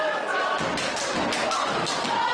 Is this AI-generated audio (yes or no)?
no